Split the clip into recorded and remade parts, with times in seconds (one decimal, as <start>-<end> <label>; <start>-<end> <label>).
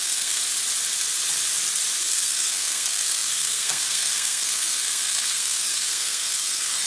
0.0-0.4 remade; 0.4-2.0 recorded; 2.0-6.9 remade